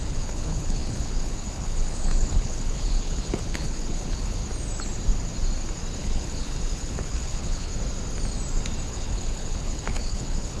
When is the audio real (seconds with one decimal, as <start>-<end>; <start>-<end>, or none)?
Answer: 4.4-6.0; 7.7-8.9